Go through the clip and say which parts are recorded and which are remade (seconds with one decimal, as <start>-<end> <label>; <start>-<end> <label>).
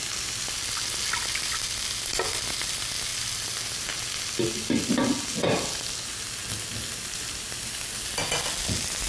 0.0-9.1 recorded